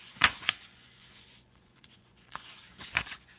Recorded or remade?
remade